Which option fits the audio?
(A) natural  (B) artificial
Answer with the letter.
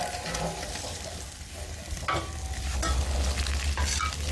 A